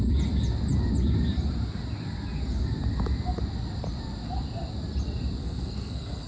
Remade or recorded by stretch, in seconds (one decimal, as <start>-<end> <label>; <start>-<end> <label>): 0.0-5.4 recorded; 5.4-6.3 remade